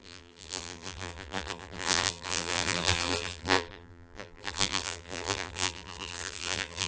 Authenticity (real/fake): fake